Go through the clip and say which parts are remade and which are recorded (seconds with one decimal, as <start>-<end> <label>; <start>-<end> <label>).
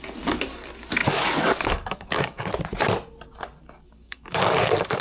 0.0-1.0 recorded; 1.0-2.5 remade; 2.5-3.9 recorded; 3.9-5.0 remade